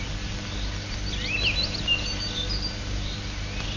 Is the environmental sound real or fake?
real